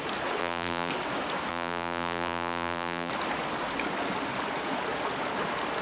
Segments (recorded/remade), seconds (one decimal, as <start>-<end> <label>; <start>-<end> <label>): 0.0-0.4 recorded; 0.4-0.9 remade; 0.9-1.5 recorded; 1.5-3.1 remade; 3.1-5.8 recorded